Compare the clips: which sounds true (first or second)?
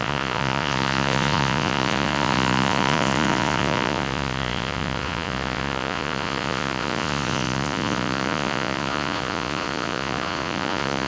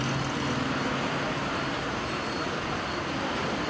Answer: second